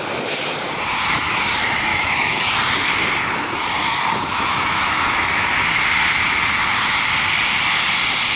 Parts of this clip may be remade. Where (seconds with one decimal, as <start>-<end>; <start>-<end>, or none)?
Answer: 1.9-2.5; 3.9-5.4

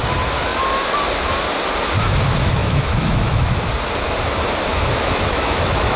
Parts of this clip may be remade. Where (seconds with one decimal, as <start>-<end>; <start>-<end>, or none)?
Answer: 2.6-3.5; 4.7-6.0

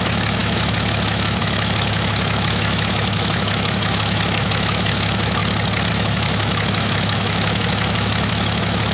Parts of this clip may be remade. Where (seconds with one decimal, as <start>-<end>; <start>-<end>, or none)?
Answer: 0.0-5.4; 5.9-8.9

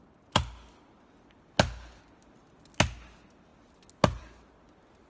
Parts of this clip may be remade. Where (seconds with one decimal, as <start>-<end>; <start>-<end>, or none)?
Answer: none

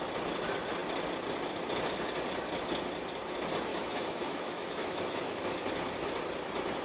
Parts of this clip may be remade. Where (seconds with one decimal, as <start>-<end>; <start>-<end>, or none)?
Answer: 3.7-5.6